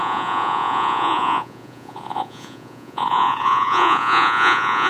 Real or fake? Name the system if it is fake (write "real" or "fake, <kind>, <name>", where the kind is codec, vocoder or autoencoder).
fake, vocoder, Vocos